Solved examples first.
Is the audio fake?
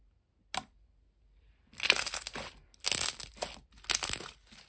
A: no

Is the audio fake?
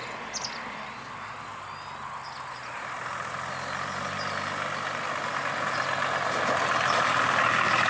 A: no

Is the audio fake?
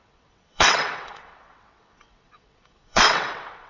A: yes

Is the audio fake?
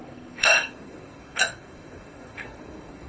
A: yes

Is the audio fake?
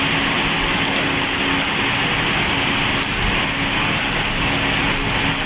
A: no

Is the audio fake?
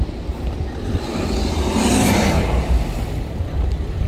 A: no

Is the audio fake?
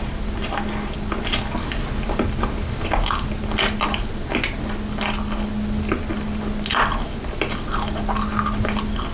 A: no